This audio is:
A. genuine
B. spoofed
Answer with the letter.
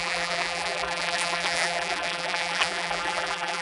B